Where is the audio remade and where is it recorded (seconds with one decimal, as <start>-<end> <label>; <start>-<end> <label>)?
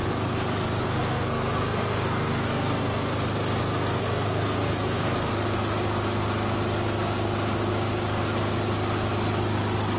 0.0-0.8 recorded; 0.8-3.1 remade; 3.1-4.0 recorded; 4.0-5.3 remade; 5.3-10.0 recorded